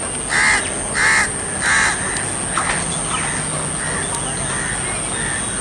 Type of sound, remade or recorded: recorded